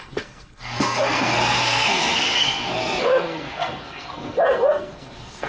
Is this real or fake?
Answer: fake